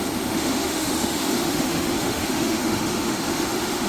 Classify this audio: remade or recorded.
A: remade